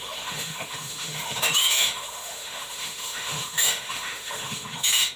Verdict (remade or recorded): remade